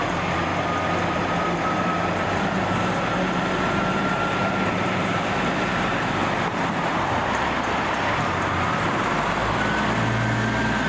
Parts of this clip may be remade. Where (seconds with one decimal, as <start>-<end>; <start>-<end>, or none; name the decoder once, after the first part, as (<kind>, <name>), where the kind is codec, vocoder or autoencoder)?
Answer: 0.0-0.5 (vocoder, BigVGAN v2); 1.1-9.4